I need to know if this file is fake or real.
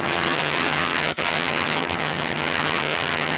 fake